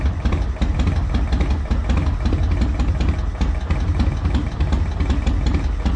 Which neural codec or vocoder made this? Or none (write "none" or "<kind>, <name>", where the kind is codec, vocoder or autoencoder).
none